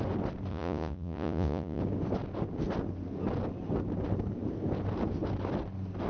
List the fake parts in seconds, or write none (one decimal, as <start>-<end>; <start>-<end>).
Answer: 0.5-1.8